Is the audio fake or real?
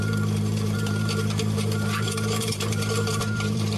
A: fake